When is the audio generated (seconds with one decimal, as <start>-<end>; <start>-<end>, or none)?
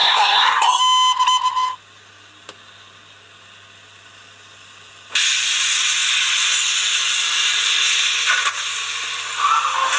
0.0-0.8